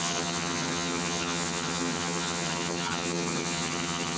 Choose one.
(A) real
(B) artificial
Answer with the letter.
B